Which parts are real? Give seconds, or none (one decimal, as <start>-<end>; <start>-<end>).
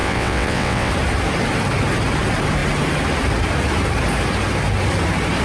0.9-5.4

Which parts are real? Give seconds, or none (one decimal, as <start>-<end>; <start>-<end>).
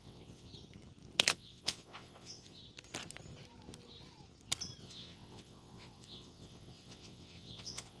0.5-1.3; 2.6-4.8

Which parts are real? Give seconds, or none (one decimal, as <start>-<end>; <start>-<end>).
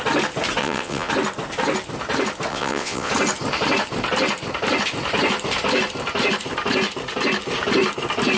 0.0-0.6; 1.1-2.5; 3.1-8.4